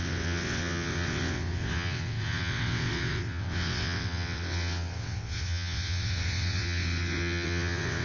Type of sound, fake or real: fake